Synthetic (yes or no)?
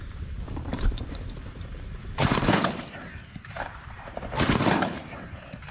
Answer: yes